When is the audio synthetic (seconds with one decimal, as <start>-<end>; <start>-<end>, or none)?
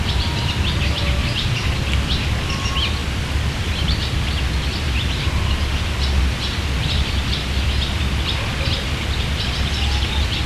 1.2-1.7